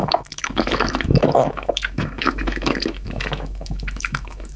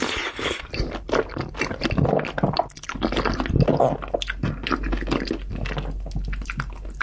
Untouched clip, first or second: second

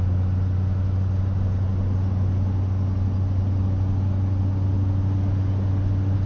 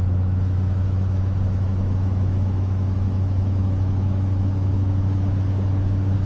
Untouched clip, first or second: first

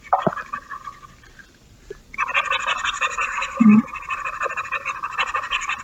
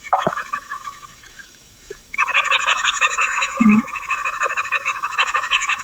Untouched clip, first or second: first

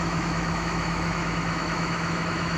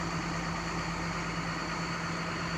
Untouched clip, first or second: second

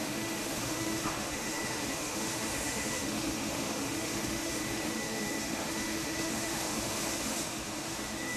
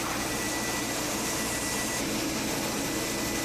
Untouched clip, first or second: second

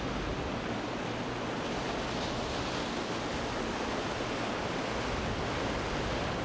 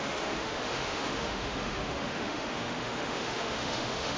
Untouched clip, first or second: first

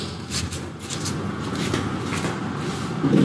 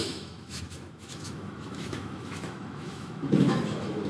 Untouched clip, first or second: first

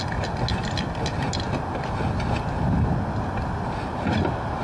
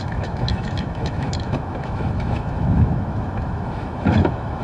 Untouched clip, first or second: first